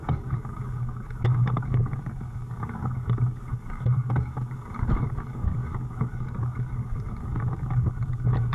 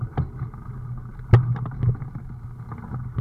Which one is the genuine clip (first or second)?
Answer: second